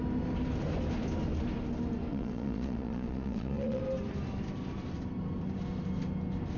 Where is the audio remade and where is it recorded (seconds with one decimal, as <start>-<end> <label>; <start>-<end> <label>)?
0.0-2.1 recorded; 2.1-3.8 remade; 3.8-6.6 recorded